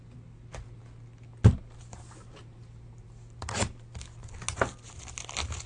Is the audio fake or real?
real